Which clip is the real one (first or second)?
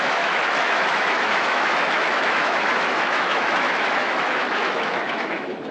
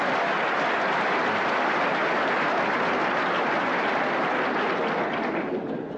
second